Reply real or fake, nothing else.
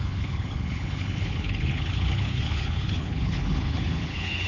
fake